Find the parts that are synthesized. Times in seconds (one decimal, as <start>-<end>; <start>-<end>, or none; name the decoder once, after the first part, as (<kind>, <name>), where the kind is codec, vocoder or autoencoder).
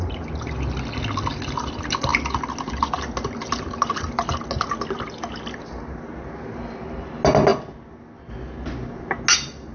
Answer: none